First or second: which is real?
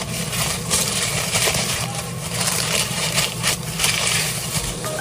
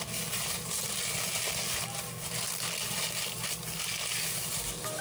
second